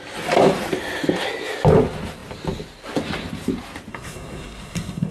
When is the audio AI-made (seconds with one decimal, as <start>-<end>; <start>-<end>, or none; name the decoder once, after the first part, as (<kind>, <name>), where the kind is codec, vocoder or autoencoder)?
3.9-5.1 (codec, SNAC)